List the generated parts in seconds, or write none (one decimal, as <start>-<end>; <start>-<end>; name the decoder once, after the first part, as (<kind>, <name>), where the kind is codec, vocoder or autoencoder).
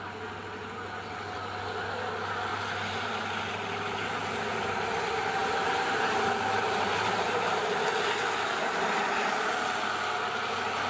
2.5-3.1 (vocoder, BigVGAN v2); 5.4-7.6